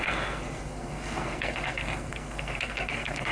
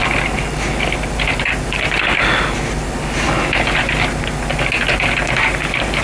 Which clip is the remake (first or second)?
first